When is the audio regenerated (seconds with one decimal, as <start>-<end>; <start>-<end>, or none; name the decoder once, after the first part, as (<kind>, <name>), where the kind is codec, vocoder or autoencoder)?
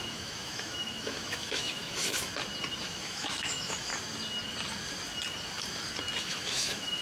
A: 0.0-2.3 (autoencoder, DAC-VAE); 2.8-3.9; 6.2-7.0